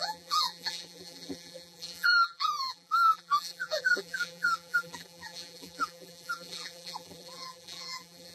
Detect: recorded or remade remade